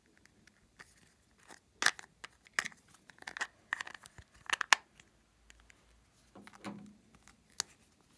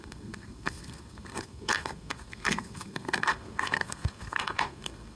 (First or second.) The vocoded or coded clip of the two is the second